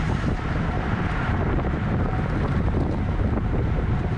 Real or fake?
fake